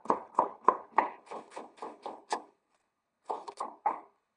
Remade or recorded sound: remade